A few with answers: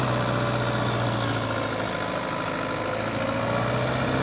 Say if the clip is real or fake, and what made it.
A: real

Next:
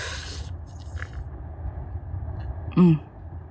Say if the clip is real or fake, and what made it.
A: real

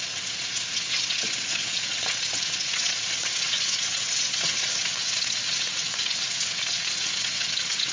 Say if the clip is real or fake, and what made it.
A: fake, vocoder, WaveNeXt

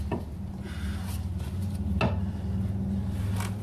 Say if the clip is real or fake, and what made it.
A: real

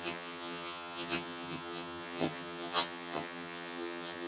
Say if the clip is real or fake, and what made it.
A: fake, vocoder, HiFi-GAN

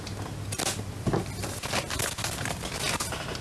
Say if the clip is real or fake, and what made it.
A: real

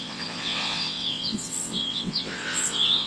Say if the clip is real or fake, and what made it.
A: fake, vocoder, WaveNeXt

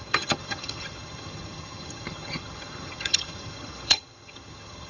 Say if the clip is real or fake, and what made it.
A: fake, vocoder, HiFi-GAN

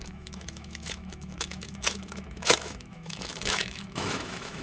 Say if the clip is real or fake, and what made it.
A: fake, autoencoder, DAC-VAE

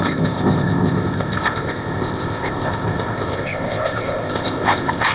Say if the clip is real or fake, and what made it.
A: fake, codec, ZipCodec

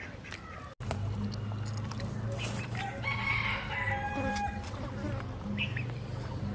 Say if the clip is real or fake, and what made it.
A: real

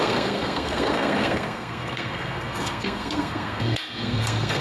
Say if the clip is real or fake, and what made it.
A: fake, codec, SNAC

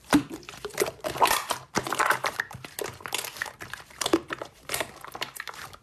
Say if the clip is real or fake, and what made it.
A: real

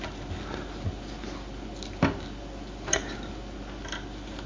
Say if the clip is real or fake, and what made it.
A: real